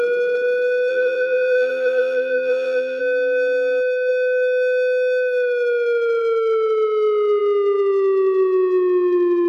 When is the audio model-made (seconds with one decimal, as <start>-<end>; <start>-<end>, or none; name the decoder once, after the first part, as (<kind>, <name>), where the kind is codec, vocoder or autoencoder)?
0.9-3.0 (vocoder, BigVGAN v2)